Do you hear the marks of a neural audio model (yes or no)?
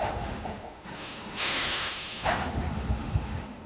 yes